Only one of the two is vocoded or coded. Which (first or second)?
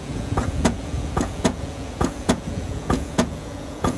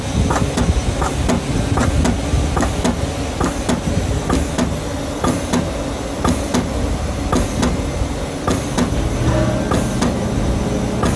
first